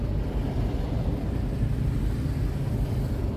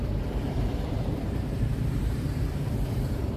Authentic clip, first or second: first